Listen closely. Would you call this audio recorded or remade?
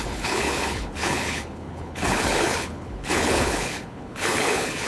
remade